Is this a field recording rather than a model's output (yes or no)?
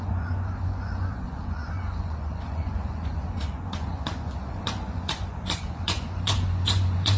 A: no